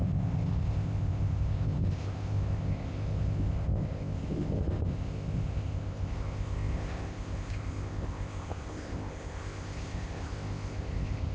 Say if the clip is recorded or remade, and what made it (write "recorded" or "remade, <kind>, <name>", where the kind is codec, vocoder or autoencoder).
remade, codec, ZipCodec